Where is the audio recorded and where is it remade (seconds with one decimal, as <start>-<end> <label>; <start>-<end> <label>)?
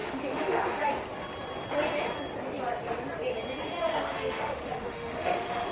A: 0.0-0.9 remade; 0.9-3.9 recorded; 3.9-5.7 remade